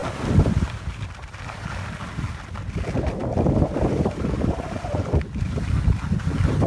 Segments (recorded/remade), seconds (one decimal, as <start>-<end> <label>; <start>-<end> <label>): 0.0-6.7 recorded